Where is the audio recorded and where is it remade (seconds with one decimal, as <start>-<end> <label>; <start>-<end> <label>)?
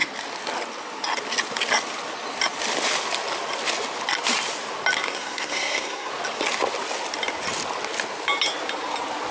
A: 0.0-5.0 recorded; 5.0-6.1 remade; 6.1-9.3 recorded